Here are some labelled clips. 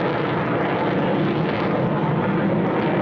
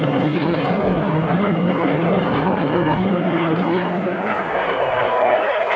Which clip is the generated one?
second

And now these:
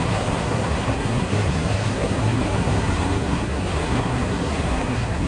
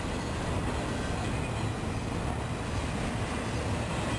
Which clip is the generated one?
first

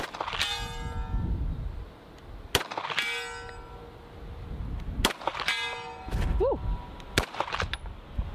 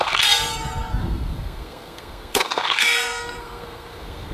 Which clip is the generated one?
second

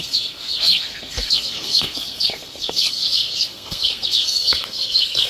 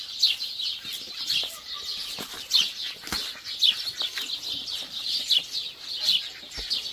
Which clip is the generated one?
first